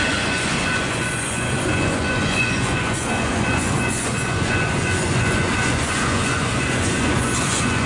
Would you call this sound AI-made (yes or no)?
yes